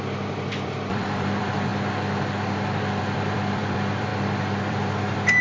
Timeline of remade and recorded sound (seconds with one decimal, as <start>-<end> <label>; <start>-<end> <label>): 0.0-1.7 remade; 1.7-3.0 recorded; 3.0-4.1 remade; 4.1-4.7 recorded; 4.7-5.4 remade